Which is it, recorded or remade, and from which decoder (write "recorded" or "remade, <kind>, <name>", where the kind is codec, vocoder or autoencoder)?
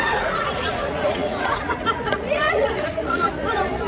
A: remade, vocoder, Vocos